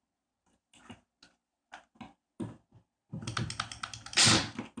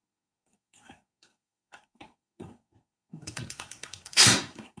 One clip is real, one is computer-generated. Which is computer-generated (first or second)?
second